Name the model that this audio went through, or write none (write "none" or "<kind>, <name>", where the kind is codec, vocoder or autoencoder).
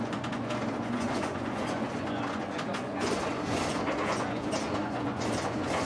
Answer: vocoder, Vocos